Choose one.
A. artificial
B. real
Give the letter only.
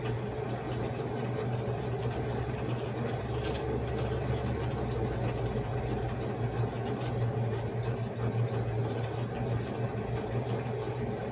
B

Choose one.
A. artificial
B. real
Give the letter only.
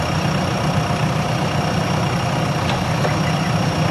B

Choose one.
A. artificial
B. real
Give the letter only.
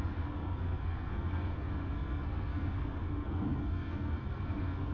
A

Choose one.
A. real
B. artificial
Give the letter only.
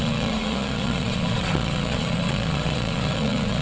B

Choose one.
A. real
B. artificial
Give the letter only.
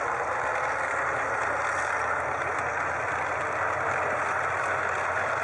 A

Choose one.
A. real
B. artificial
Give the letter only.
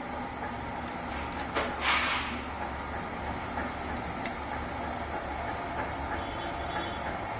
A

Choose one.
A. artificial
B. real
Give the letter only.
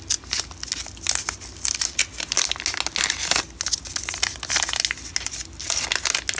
B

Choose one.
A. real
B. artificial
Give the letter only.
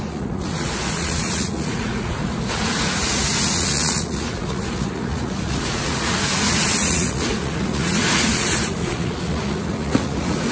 B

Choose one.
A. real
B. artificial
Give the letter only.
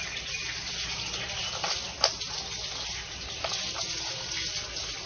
A